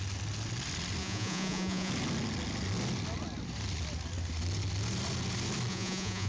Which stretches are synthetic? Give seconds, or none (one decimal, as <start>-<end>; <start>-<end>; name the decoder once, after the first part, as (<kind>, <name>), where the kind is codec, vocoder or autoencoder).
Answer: 1.0-1.9 (vocoder, Vocos); 5.7-6.3